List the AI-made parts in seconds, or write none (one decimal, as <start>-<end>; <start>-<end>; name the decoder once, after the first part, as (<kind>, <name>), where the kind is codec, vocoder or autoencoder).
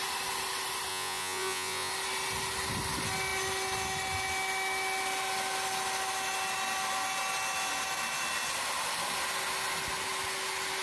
0.9-1.9 (vocoder, Vocos)